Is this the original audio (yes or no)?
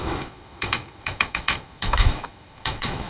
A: no